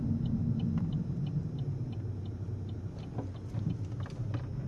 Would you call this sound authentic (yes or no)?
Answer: yes